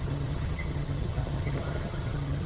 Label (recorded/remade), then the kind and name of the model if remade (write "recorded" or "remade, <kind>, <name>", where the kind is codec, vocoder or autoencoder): remade, vocoder, HiFi-GAN